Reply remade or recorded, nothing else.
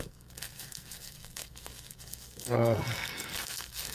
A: remade